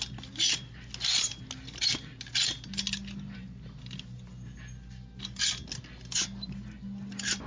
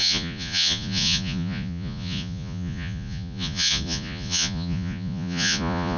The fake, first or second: second